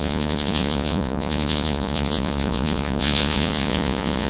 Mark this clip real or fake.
fake